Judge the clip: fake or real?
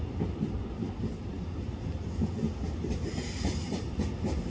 real